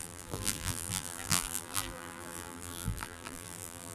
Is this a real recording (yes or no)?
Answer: no